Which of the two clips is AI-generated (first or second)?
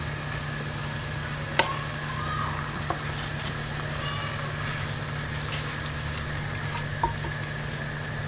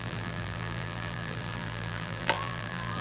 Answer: second